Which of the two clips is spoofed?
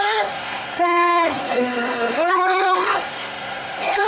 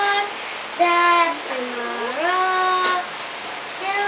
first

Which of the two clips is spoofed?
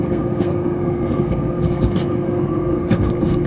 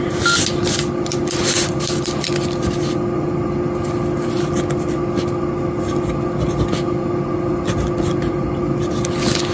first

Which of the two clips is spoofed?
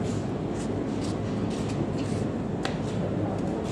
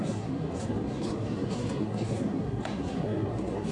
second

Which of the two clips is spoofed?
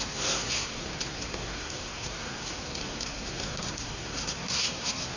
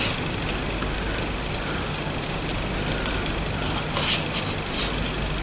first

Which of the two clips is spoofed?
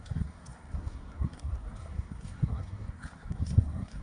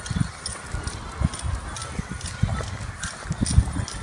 first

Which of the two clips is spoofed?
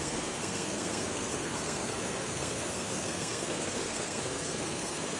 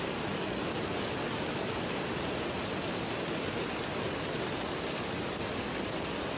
first